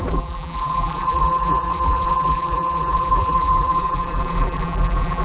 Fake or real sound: fake